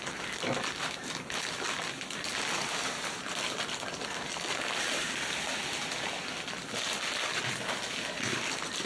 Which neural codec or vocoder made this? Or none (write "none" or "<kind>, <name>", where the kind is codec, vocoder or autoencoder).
none